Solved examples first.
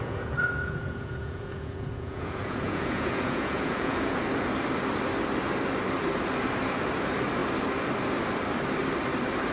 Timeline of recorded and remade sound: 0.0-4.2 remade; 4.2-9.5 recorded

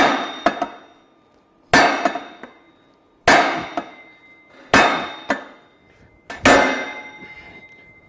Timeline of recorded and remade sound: 0.0-8.1 recorded

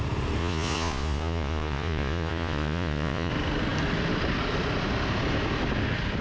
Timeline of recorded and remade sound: 0.0-0.4 recorded; 0.4-3.3 remade; 3.3-6.2 recorded

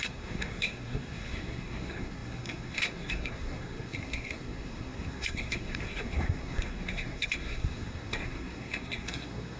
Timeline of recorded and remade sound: 0.0-9.6 remade

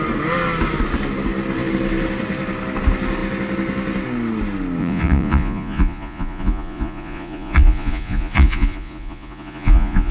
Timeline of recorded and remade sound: 0.0-4.8 recorded; 4.8-10.1 remade